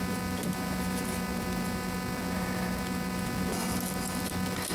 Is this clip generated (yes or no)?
no